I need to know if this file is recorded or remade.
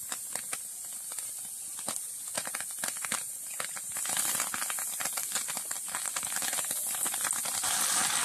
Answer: recorded